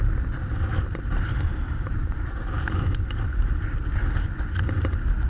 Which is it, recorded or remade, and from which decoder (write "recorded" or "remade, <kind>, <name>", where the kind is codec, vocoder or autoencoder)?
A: recorded